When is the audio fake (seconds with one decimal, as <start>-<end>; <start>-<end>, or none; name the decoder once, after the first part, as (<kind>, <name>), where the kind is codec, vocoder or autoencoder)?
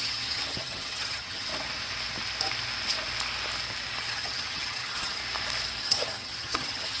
0.0-1.5 (vocoder, HiFi-GAN); 4.0-5.2; 5.8-7.0